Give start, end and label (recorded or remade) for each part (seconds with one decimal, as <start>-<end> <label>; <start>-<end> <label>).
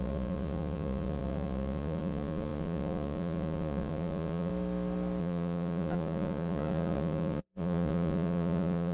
0.0-4.5 remade; 4.5-5.2 recorded; 5.2-8.9 remade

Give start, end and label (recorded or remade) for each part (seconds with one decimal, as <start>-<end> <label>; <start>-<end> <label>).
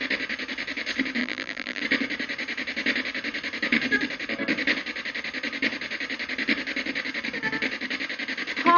0.0-1.2 recorded; 1.2-1.8 remade; 1.8-8.8 recorded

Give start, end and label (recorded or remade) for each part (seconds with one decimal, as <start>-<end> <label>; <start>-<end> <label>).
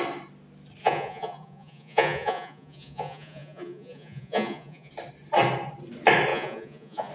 0.0-0.8 recorded; 0.8-4.9 remade; 4.9-6.3 recorded; 6.3-7.1 remade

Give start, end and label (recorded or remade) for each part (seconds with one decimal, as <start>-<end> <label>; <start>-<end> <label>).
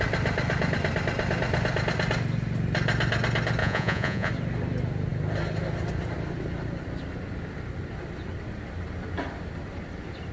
0.0-3.6 recorded; 3.6-4.3 remade; 4.3-10.3 recorded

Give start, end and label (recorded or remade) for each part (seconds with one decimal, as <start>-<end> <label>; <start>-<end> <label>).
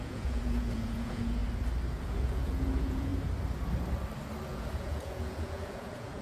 0.0-1.4 remade; 1.4-2.0 recorded; 2.0-3.1 remade; 3.1-4.5 recorded; 4.5-6.2 remade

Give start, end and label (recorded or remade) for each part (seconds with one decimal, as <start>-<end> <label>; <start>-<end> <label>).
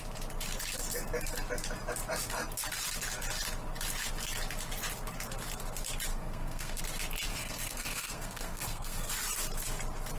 0.0-6.1 recorded; 6.1-6.8 remade; 6.8-7.3 recorded; 7.3-9.1 remade; 9.1-10.2 recorded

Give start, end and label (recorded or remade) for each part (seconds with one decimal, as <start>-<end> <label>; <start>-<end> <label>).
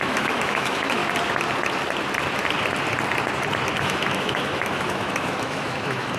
0.0-1.0 remade; 1.0-3.7 recorded; 3.7-6.2 remade